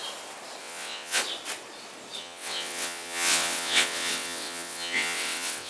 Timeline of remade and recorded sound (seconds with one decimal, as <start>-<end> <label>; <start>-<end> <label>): 0.0-0.6 recorded; 0.6-1.2 remade; 1.2-2.2 recorded; 2.2-5.7 remade